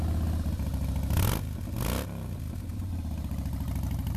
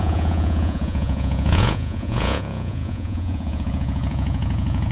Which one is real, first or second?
first